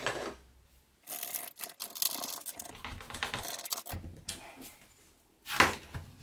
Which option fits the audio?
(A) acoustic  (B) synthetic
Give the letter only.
A